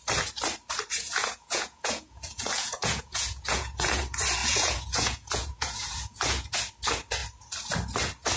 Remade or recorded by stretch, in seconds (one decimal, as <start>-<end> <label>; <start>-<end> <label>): 0.0-0.9 recorded; 0.9-4.0 remade; 4.0-4.4 recorded; 4.4-6.5 remade; 6.5-8.4 recorded